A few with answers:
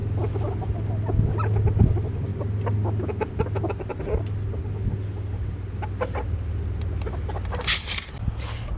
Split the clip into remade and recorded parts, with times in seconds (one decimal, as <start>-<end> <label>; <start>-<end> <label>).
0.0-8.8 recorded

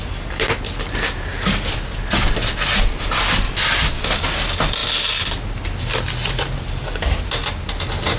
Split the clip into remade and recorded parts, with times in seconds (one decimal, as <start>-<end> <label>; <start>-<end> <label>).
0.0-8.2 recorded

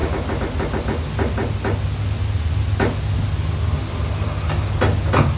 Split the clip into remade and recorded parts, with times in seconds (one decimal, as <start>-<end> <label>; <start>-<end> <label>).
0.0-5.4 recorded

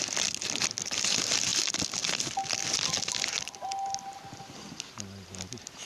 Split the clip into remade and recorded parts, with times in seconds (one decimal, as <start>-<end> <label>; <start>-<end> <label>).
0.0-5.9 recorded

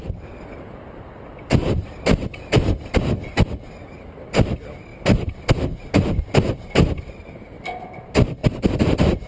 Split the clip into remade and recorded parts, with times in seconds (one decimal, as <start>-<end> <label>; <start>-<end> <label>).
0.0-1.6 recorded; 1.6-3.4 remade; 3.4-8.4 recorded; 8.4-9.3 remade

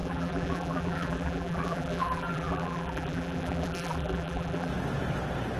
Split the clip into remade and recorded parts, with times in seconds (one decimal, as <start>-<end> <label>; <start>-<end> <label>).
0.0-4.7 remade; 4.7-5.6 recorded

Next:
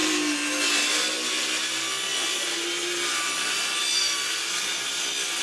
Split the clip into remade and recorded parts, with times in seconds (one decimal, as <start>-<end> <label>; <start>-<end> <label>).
0.0-0.7 remade; 0.7-5.4 recorded